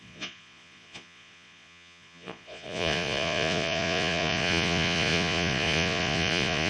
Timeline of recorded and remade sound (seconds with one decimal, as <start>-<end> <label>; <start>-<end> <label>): 0.0-6.7 remade